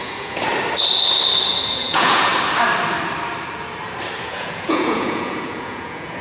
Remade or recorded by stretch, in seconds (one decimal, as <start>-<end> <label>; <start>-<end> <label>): 0.0-0.5 remade; 0.5-1.7 recorded; 1.7-2.3 remade; 2.3-4.2 recorded; 4.2-6.2 remade